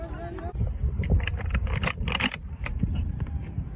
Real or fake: real